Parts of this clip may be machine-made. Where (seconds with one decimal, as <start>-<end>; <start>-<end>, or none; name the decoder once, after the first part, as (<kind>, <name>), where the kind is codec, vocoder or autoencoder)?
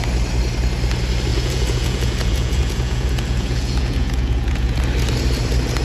1.3-4.8 (vocoder, Vocos)